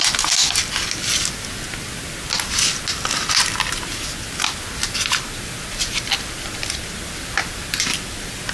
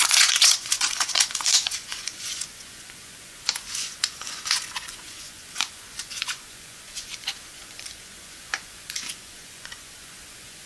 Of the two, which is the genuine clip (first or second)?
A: first